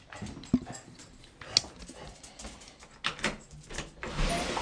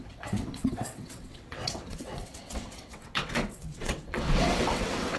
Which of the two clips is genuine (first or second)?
first